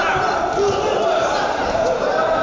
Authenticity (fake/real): real